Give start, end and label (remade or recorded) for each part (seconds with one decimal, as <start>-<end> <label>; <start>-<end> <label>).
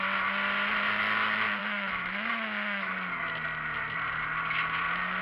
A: 0.0-1.6 recorded; 1.6-2.9 remade; 2.9-5.2 recorded